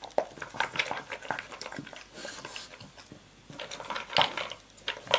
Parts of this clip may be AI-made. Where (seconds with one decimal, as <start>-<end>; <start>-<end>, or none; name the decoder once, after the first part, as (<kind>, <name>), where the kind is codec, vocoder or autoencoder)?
none